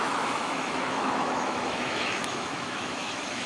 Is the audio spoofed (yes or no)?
yes